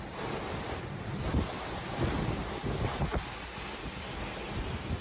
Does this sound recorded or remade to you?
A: recorded